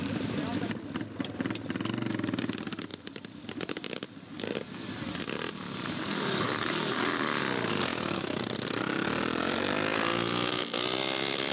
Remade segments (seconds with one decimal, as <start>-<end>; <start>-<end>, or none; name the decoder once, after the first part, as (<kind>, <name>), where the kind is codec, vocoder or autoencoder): 6.1-7.4 (codec, DAC); 7.9-8.4